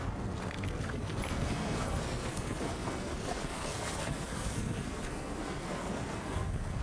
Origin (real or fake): fake